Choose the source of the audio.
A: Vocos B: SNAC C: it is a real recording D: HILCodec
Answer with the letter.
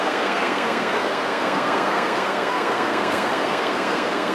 B